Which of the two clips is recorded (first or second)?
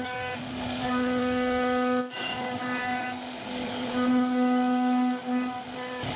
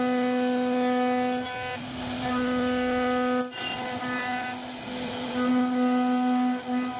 second